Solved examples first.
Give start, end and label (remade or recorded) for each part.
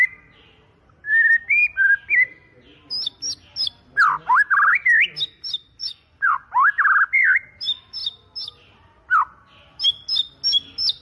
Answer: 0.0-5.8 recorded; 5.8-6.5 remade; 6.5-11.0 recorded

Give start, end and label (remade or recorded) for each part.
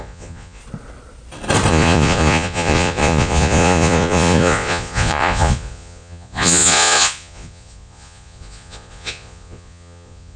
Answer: 0.0-0.6 remade; 0.6-1.7 recorded; 1.7-10.4 remade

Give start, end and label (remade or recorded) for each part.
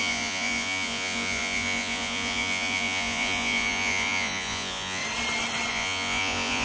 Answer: 0.0-5.0 remade; 5.0-5.7 recorded; 5.7-6.6 remade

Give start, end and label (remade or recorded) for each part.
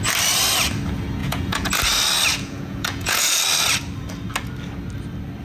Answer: 0.0-1.2 recorded; 1.2-1.7 remade; 1.7-2.3 recorded; 2.3-3.4 remade; 3.4-5.4 recorded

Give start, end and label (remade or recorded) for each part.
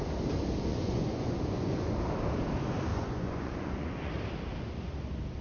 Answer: 0.0-0.7 recorded; 0.7-2.0 remade; 2.0-2.9 recorded; 2.9-4.1 remade; 4.1-5.4 recorded